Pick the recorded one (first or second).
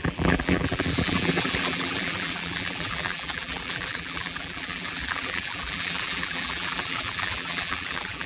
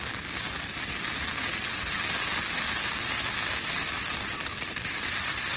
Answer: second